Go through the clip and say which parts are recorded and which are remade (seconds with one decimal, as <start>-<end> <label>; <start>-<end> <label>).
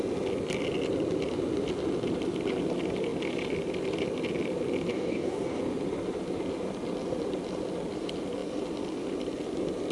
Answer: 0.0-4.9 recorded; 4.9-5.6 remade; 5.6-9.9 recorded